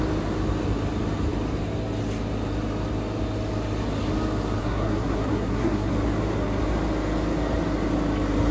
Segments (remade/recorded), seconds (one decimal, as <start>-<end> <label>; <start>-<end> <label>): 0.0-4.6 recorded; 4.6-5.9 remade; 5.9-8.5 recorded